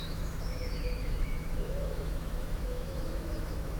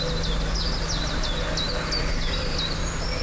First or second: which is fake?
first